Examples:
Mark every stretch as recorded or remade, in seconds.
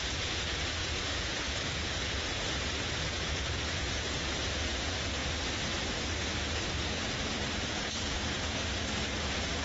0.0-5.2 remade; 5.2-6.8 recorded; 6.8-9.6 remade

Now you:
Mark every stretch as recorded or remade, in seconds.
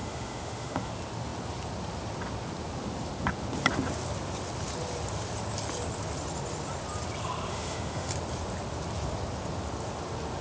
0.0-0.9 remade; 0.9-7.5 recorded; 7.5-8.1 remade; 8.1-10.4 recorded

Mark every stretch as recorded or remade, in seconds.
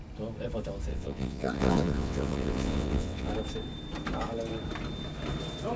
0.0-0.9 recorded; 0.9-3.3 remade; 3.3-5.8 recorded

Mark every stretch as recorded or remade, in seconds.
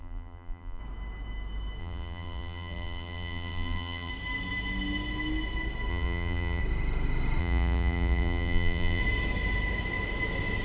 0.0-0.8 remade; 0.8-1.8 recorded; 1.8-4.1 remade; 4.1-5.9 recorded; 5.9-6.6 remade; 6.6-7.4 recorded; 7.4-9.0 remade; 9.0-10.6 recorded